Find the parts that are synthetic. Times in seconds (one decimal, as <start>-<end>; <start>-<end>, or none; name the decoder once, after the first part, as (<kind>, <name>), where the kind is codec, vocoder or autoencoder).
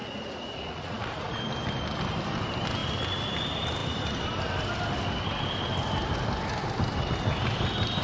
0.0-1.4 (vocoder, Vocos)